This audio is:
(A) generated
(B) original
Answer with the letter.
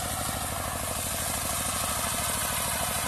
B